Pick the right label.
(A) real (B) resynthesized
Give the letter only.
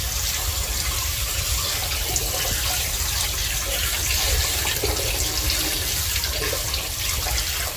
A